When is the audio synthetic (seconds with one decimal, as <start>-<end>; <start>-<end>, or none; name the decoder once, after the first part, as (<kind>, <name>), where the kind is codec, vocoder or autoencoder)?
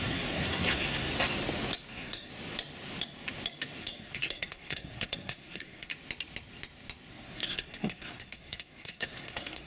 0.0-1.1 (codec, SNAC); 1.9-2.3; 3.8-5.9; 7.1-9.7